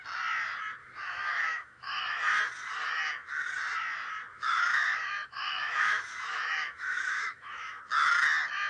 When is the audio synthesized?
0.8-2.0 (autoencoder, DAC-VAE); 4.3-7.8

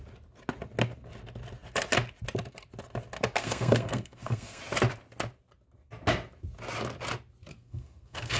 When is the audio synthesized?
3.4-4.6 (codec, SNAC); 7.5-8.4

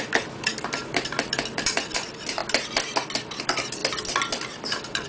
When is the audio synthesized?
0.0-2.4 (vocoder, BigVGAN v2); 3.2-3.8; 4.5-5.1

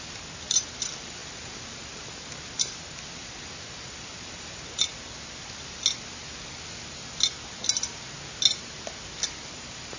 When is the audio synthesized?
0.0-4.9 (vocoder, BigVGAN v2); 9.4-10.0

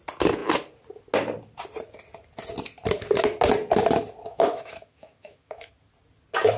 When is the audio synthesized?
4.3-5.7 (autoencoder, DAC-VAE)

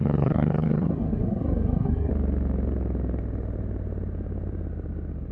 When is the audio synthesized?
0.0-2.1 (codec, SNAC)